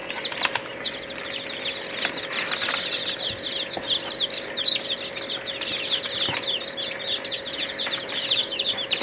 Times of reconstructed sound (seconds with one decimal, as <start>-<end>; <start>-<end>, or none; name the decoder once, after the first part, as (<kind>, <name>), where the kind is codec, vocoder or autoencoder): none